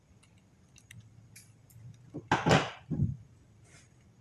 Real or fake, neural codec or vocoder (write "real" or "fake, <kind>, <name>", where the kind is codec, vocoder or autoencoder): real